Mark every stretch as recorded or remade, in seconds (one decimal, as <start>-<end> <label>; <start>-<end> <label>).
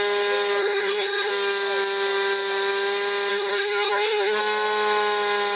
0.0-0.6 recorded; 0.6-1.3 remade; 1.3-3.3 recorded; 3.3-4.4 remade; 4.4-5.6 recorded